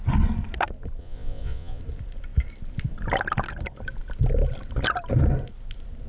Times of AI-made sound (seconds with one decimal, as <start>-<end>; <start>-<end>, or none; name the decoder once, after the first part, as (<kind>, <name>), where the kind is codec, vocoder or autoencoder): 1.0-1.8 (vocoder, Vocos)